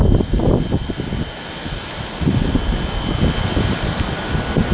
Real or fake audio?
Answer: real